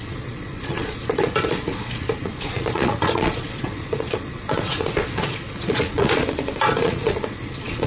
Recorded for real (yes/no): no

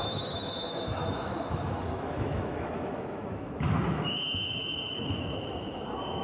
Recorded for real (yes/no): no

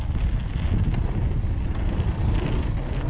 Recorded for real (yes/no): yes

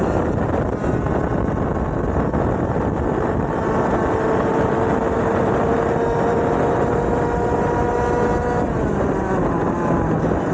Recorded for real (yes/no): yes